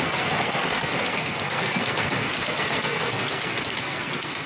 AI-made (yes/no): yes